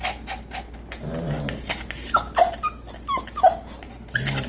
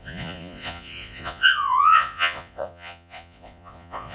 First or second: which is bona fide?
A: first